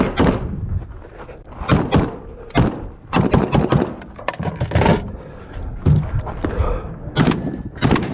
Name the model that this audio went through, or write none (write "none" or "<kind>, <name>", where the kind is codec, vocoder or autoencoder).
none